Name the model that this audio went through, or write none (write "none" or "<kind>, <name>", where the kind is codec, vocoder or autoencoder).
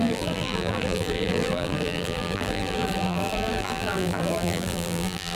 vocoder, BigVGAN v2